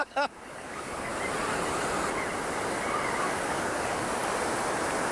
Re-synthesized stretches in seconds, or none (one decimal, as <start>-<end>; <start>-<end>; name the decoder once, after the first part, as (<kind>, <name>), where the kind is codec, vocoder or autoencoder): 0.0-1.1 (codec, DAC); 3.2-4.2